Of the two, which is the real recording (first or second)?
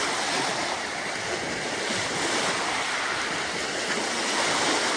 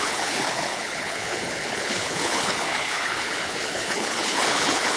first